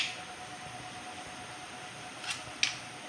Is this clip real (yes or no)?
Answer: yes